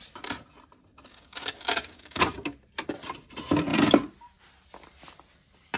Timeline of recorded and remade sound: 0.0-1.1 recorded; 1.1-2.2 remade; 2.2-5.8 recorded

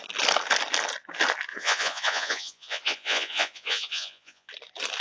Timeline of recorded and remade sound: 0.0-1.5 recorded; 1.5-4.5 remade; 4.5-5.0 recorded